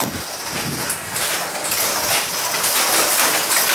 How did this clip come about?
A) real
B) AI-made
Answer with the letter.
A